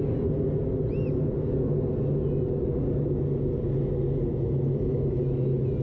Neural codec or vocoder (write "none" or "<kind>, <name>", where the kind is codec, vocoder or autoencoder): none